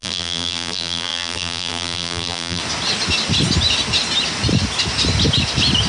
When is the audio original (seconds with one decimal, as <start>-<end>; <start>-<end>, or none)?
2.6-5.9